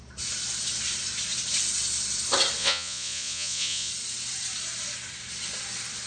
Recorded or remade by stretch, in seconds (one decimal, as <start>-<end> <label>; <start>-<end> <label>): 0.0-2.6 recorded; 2.6-3.9 remade; 3.9-6.1 recorded